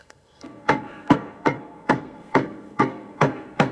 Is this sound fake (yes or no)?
yes